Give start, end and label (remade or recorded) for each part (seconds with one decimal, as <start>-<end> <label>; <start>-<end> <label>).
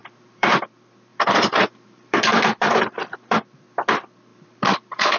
0.0-0.6 remade; 0.6-1.1 recorded; 1.1-3.6 remade; 3.6-4.3 recorded; 4.3-5.2 remade